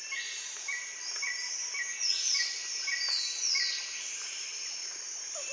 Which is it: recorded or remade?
recorded